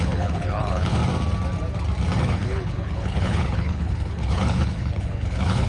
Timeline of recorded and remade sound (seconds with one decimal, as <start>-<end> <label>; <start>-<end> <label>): 0.0-1.0 remade; 1.0-2.2 recorded; 2.2-5.7 remade